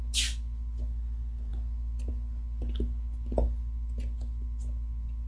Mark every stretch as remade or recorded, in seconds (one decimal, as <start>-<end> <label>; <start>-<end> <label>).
0.0-5.3 recorded